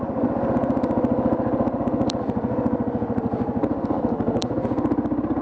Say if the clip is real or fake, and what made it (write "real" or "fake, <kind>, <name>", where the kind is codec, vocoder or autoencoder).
real